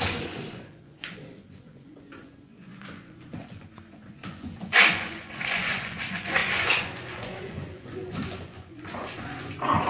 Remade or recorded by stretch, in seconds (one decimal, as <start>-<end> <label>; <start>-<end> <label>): 0.0-9.9 remade